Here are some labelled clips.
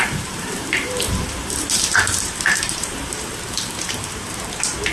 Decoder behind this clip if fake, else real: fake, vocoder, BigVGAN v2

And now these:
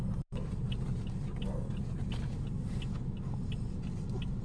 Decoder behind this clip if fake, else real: real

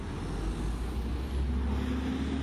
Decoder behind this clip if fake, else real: real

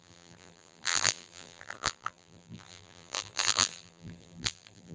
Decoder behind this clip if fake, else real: fake, vocoder, BigVGAN v2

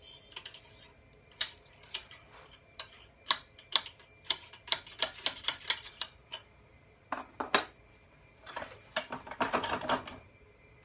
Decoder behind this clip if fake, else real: fake, vocoder, BigVGAN v2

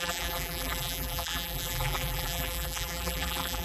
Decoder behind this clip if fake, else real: fake, vocoder, BigVGAN v2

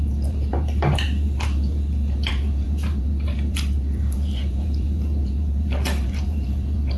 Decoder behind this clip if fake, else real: fake, vocoder, BigVGAN v2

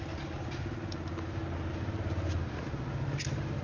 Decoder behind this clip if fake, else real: real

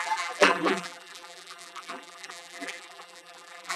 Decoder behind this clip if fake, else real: fake, vocoder, BigVGAN v2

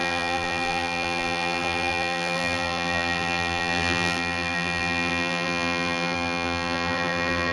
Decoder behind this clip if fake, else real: fake, vocoder, BigVGAN v2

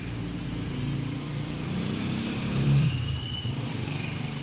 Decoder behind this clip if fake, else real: fake, vocoder, BigVGAN v2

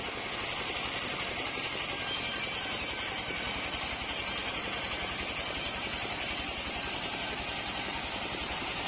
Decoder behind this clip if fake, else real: real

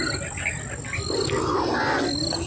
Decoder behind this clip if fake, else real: real